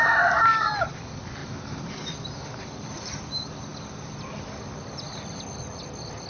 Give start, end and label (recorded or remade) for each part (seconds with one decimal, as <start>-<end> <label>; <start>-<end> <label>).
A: 0.0-6.3 recorded